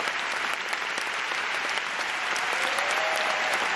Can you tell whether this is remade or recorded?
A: remade